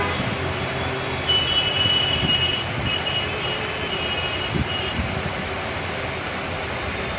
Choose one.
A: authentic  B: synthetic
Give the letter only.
A